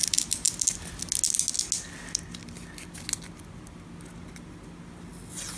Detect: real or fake real